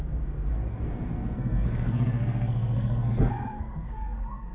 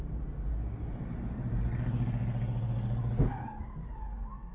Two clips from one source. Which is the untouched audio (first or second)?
second